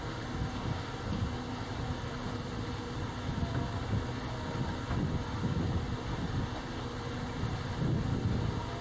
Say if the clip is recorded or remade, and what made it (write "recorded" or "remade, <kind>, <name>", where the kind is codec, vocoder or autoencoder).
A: recorded